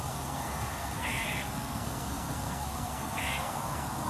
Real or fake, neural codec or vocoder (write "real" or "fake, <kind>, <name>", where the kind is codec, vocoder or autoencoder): fake, codec, SNAC